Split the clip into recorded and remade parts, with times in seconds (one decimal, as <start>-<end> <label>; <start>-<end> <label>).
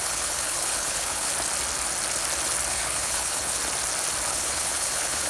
0.0-1.3 remade; 1.3-2.7 recorded; 2.7-3.6 remade; 3.6-4.3 recorded; 4.3-5.3 remade